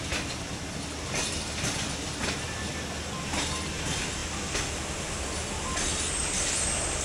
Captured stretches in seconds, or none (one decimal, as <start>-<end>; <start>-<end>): 0.0-7.0